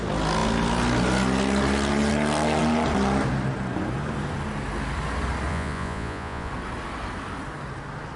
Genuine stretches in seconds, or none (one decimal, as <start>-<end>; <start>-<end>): 0.0-5.5; 6.5-8.2